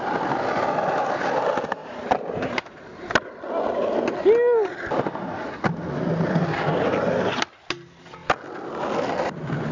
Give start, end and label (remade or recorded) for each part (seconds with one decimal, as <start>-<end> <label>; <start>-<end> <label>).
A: 0.0-1.8 recorded; 1.8-3.1 remade; 3.1-9.7 recorded